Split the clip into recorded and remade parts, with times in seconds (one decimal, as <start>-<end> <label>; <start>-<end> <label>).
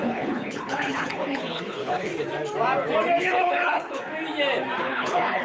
0.0-2.1 remade; 2.1-3.2 recorded; 3.2-4.0 remade; 4.0-4.8 recorded; 4.8-5.4 remade